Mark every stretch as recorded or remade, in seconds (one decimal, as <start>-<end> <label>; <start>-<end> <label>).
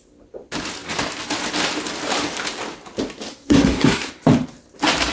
0.0-3.3 recorded; 3.3-4.1 remade; 4.1-5.1 recorded